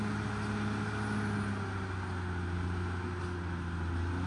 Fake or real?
real